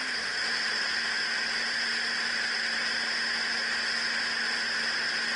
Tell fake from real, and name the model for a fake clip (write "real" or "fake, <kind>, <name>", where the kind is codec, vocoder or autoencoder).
real